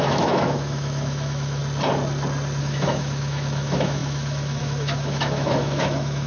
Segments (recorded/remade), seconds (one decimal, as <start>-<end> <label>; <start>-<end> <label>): 0.0-1.6 remade; 1.6-2.6 recorded; 2.6-6.3 remade